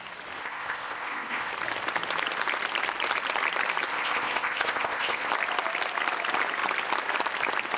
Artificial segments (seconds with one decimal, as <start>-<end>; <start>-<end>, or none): 0.4-1.5; 3.9-5.3